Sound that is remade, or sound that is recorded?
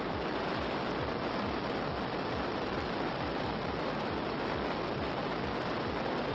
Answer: recorded